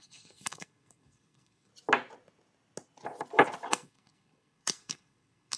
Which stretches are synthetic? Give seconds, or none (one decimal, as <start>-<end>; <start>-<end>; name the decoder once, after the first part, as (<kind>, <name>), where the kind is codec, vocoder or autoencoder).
0.0-1.7 (codec, SNAC); 3.7-5.6